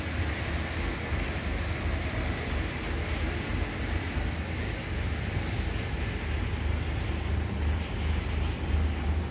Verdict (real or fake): real